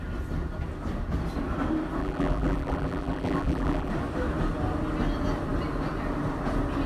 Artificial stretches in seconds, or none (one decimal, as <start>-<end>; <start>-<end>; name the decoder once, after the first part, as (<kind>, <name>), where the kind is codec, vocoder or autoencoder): 2.0-3.9 (vocoder, BigVGAN v2)